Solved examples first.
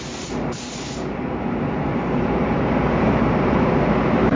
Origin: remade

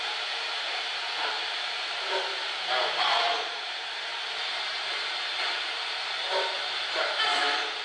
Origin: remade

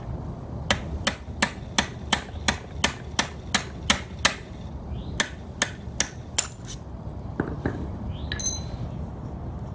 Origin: recorded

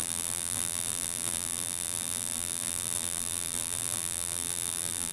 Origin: remade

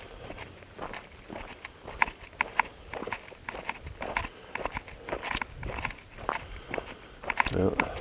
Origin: recorded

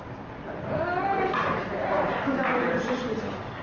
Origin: recorded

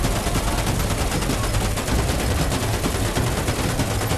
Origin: recorded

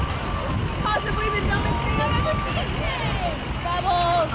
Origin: recorded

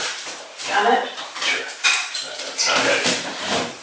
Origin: remade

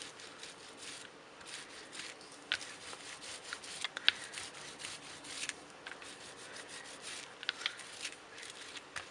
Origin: recorded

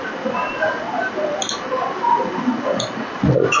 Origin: recorded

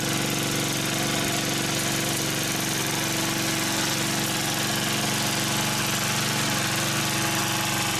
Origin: recorded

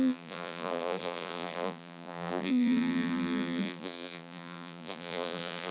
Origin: remade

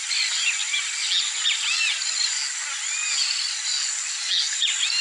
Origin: recorded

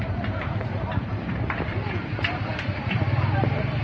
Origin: remade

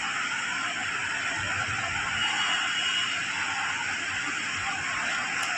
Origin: recorded